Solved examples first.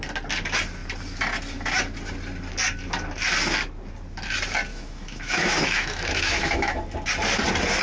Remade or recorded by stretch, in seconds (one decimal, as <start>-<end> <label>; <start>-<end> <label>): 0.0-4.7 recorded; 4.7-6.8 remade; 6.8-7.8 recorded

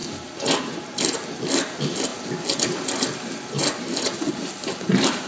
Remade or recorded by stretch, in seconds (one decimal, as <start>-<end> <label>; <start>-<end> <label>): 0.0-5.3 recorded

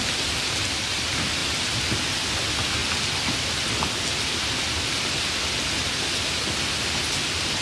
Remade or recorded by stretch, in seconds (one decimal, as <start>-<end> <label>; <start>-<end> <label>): 0.0-7.6 recorded

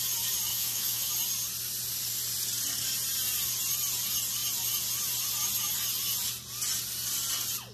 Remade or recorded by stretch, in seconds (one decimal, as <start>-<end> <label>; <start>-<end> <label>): 0.0-0.5 recorded; 0.5-1.1 remade; 1.1-7.7 recorded

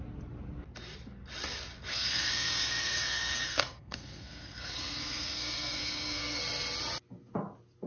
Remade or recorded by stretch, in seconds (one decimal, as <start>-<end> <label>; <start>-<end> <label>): 0.0-1.9 recorded; 1.9-6.4 remade; 6.4-7.9 recorded

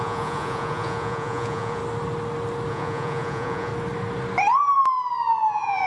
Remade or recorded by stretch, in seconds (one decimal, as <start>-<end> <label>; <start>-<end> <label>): 0.0-1.8 remade; 1.8-2.7 recorded; 2.7-3.7 remade; 3.7-5.5 recorded; 5.5-5.9 remade